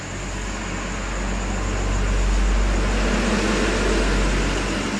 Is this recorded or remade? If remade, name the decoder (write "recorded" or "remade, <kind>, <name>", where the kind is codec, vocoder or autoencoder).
recorded